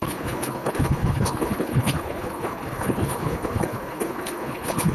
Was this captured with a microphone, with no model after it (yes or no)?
no